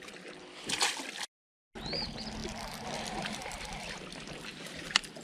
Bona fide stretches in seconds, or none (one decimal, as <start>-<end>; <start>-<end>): 0.0-5.2